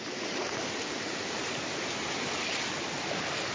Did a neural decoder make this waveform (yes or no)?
no